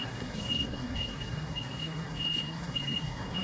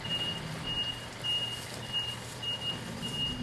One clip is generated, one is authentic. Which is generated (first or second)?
first